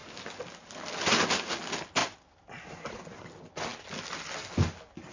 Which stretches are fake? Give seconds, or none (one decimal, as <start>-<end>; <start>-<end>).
2.0-2.6